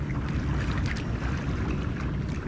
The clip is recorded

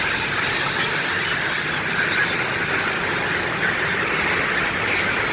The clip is remade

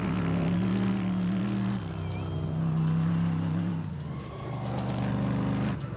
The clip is recorded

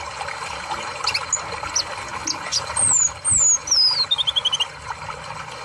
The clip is recorded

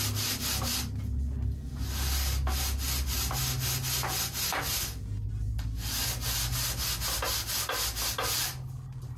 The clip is recorded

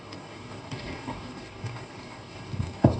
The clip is remade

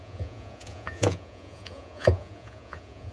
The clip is remade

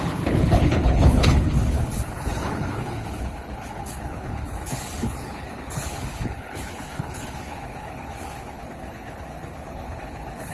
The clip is remade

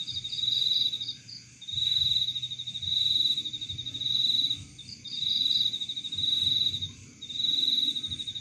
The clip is remade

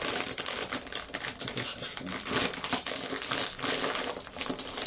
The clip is recorded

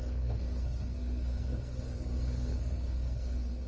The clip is remade